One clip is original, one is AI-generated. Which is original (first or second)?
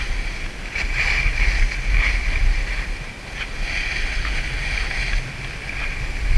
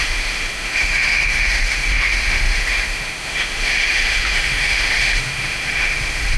first